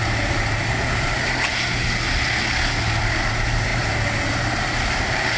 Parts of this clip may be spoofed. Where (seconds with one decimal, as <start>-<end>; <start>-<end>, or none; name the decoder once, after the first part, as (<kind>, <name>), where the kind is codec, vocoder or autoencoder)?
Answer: 0.0-1.5 (vocoder, BigVGAN v2); 3.1-5.4